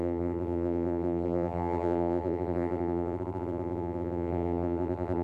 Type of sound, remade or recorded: remade